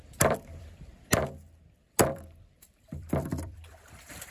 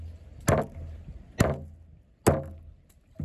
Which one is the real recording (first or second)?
second